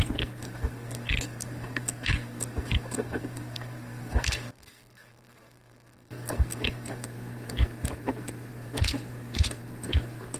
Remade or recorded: remade